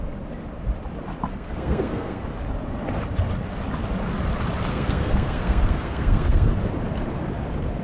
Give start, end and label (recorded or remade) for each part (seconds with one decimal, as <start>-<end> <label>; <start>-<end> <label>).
0.0-1.3 recorded; 1.3-2.2 remade; 2.2-4.7 recorded; 4.7-6.6 remade; 6.6-7.8 recorded